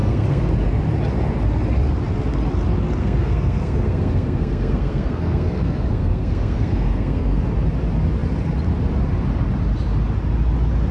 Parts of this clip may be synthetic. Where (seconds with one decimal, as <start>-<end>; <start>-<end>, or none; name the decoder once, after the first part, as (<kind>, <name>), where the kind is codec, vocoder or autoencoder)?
0.0-0.5 (codec, SNAC); 3.0-7.4